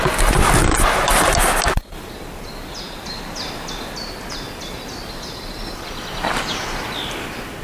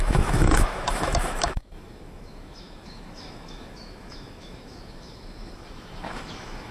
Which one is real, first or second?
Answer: first